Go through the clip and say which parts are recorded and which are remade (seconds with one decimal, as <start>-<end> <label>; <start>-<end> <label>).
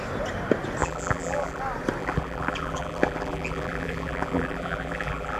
0.0-0.8 recorded; 0.8-1.6 remade; 1.6-2.0 recorded; 2.0-5.4 remade